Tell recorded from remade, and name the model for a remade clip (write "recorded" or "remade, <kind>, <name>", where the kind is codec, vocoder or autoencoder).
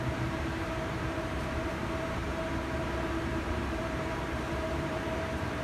remade, vocoder, BigVGAN v2